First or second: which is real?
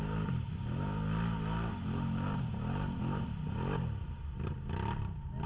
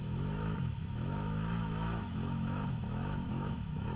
first